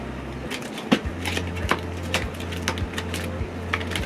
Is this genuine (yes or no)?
yes